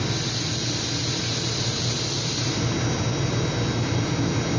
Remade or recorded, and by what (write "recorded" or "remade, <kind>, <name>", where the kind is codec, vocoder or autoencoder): recorded